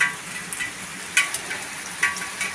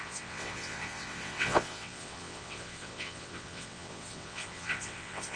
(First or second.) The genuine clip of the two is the first